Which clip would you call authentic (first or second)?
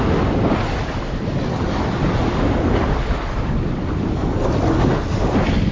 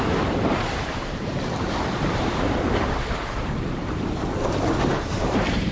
first